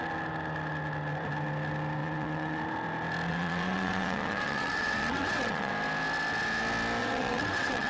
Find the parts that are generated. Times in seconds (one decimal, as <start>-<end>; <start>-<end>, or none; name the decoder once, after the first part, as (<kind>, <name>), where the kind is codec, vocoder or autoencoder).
2.0-2.6 (vocoder, WaveNeXt); 3.3-5.7; 7.0-7.9